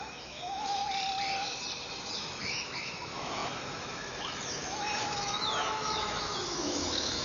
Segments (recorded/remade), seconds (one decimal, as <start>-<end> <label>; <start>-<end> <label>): 0.0-0.8 remade; 0.8-2.1 recorded; 2.1-7.2 remade